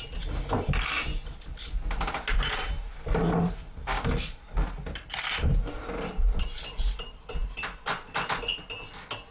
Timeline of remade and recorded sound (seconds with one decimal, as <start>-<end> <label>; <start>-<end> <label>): 0.0-1.1 recorded; 1.1-2.9 remade; 2.9-9.3 recorded